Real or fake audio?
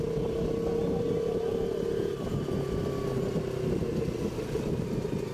real